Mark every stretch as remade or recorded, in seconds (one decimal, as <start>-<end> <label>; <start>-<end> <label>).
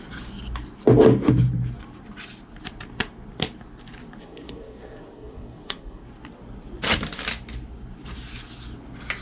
0.0-4.2 recorded; 4.2-6.0 remade; 6.0-9.2 recorded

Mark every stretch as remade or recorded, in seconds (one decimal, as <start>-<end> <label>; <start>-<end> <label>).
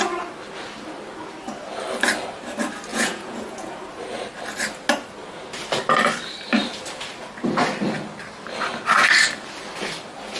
0.0-2.9 recorded; 2.9-3.7 remade; 3.7-10.4 recorded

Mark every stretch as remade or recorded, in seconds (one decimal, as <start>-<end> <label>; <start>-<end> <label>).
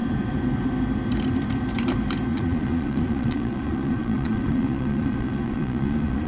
0.0-2.3 recorded; 2.3-6.3 remade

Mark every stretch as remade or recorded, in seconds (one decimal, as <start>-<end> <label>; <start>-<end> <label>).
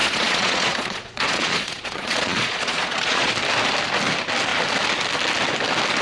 0.0-3.3 remade; 3.3-6.0 recorded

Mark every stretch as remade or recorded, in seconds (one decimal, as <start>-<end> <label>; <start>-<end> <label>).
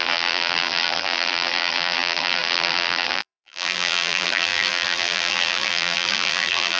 0.0-6.8 remade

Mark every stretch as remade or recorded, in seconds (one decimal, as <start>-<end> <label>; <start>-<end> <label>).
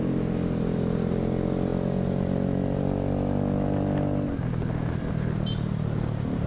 0.0-6.5 recorded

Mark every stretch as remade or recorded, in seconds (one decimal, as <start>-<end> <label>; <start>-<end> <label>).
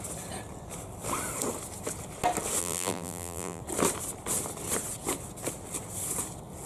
0.0-2.6 recorded; 2.6-3.6 remade; 3.6-6.7 recorded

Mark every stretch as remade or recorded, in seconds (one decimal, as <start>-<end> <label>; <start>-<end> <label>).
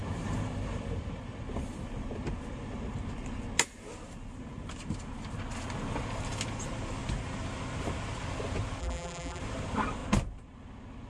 0.0-8.8 recorded; 8.8-9.4 remade; 9.4-11.1 recorded